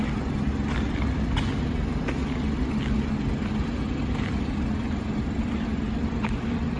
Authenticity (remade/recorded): recorded